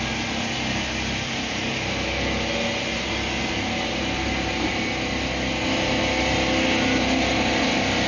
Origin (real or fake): real